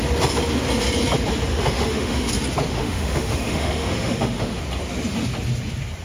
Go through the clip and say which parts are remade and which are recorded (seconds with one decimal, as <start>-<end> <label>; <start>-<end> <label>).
0.0-1.5 recorded; 1.5-2.3 remade; 2.3-2.7 recorded; 2.7-4.6 remade; 4.6-6.0 recorded